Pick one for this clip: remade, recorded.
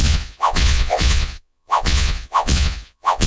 remade